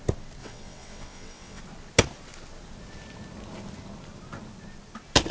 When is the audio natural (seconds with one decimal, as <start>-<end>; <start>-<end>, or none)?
0.0-0.4; 1.6-5.3